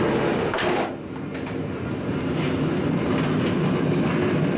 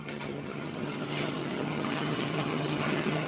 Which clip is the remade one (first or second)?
second